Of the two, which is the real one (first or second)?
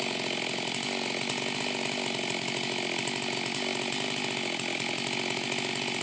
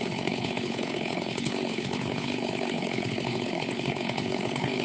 first